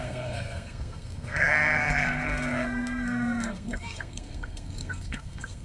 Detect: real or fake fake